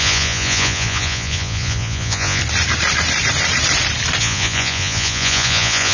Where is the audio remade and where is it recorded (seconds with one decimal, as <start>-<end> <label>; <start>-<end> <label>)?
0.0-2.4 remade; 2.4-4.2 recorded; 4.2-5.9 remade